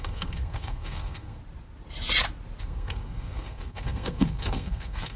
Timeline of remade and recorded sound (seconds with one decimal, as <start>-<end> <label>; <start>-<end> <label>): 0.0-1.4 remade; 1.4-2.6 recorded; 2.6-5.2 remade